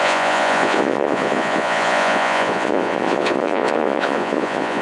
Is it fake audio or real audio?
fake